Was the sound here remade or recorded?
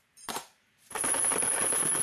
remade